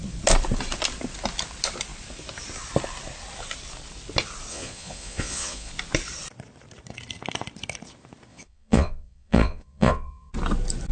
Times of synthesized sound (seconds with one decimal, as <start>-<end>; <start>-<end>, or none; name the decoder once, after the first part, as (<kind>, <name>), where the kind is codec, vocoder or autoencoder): 4.5-5.7 (vocoder, Vocos); 8.3-10.3